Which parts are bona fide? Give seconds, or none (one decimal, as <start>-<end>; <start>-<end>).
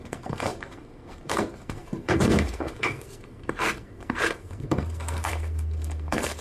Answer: none